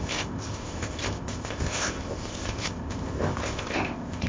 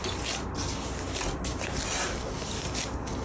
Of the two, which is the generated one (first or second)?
first